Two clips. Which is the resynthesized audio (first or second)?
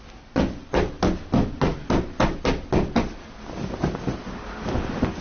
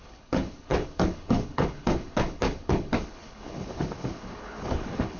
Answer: second